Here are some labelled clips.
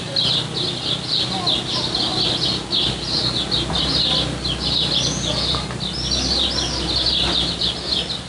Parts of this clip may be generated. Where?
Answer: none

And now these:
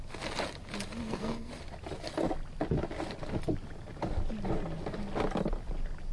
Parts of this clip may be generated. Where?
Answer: 1.0-1.5 (codec, SNAC)

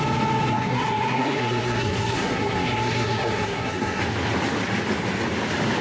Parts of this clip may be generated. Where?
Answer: 0.5-4.0 (codec, SNAC)

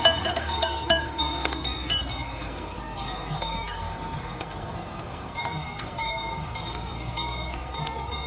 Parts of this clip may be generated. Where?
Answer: 0.0-8.3 (codec, SNAC)